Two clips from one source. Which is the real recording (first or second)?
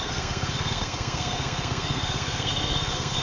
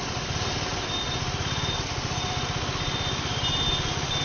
second